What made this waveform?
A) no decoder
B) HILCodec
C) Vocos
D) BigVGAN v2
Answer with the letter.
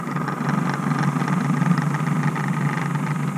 A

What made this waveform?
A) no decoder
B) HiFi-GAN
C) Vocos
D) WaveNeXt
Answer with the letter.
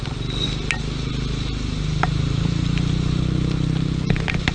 A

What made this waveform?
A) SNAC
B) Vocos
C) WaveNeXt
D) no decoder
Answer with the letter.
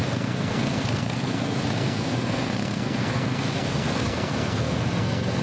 A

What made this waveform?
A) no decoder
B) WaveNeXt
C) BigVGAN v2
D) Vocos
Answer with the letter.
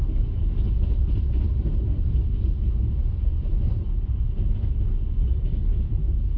A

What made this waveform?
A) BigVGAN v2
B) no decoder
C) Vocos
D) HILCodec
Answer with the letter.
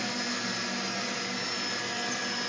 B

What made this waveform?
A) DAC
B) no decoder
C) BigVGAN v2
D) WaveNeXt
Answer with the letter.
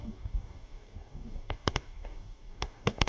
A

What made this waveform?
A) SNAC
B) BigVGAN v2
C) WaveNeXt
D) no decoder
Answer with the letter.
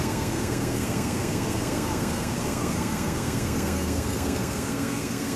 A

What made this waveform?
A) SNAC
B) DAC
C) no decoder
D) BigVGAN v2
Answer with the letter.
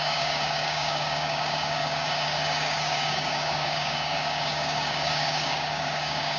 B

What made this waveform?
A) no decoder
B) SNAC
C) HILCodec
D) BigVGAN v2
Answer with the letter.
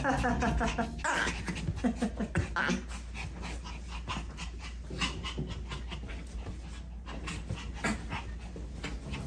A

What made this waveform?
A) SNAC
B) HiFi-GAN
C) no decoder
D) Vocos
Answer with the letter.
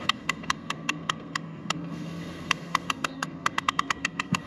A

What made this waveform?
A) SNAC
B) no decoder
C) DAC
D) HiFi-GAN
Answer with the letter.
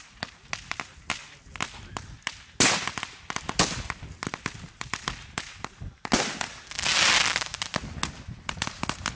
B